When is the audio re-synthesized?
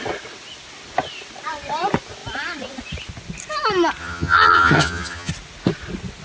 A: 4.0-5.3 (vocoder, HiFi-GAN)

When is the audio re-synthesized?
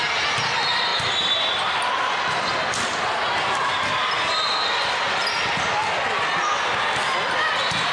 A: none